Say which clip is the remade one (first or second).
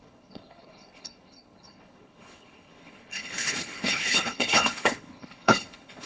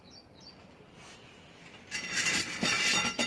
first